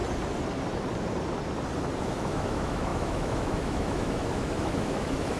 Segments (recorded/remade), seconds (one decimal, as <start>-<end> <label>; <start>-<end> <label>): 0.0-2.0 recorded; 2.0-5.4 remade